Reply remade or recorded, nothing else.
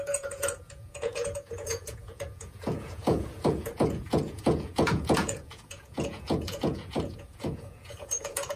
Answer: remade